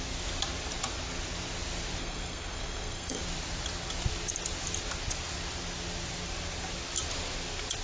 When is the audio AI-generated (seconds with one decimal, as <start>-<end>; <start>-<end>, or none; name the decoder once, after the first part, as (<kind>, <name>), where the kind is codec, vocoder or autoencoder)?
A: 2.0-3.2 (codec, SNAC)